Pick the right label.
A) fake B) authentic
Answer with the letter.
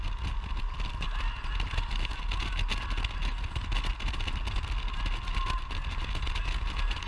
B